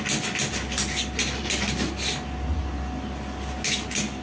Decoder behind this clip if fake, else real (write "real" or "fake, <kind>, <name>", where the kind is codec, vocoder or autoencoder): real